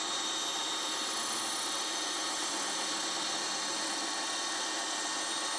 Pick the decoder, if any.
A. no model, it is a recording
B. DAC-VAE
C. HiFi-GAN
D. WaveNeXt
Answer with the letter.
A